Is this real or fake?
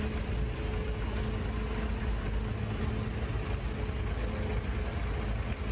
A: real